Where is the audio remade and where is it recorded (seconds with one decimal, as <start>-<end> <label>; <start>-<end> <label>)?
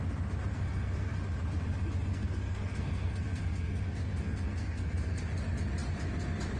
0.0-0.5 recorded; 0.5-1.2 remade; 1.2-2.1 recorded; 2.1-5.2 remade; 5.2-6.6 recorded